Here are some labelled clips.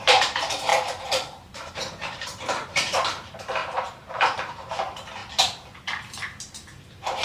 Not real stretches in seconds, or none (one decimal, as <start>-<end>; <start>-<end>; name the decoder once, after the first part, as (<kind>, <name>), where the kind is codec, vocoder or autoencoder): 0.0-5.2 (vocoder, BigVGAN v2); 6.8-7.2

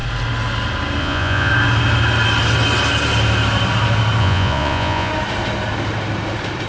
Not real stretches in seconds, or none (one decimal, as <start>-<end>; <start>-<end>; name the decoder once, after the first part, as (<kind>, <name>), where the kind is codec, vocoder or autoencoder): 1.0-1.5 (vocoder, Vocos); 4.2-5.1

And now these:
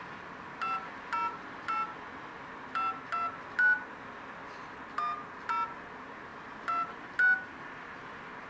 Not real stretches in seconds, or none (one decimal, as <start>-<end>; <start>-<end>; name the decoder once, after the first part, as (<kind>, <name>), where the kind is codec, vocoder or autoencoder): none

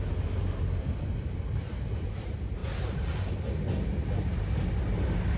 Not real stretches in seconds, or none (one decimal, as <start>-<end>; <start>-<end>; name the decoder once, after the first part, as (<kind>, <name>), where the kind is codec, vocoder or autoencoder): 0.8-1.6 (vocoder, BigVGAN v2); 2.6-3.3